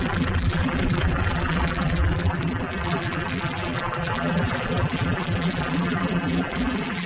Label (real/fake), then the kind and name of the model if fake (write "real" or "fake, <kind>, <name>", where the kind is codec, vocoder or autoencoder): fake, vocoder, BigVGAN v2